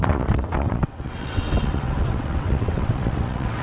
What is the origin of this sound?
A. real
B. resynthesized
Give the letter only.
B